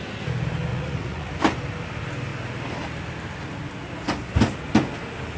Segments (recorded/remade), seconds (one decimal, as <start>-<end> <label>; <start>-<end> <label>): 0.0-0.7 recorded; 0.7-1.3 remade; 1.3-5.4 recorded